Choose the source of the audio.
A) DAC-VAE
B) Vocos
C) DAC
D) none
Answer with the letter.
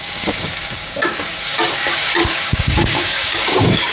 C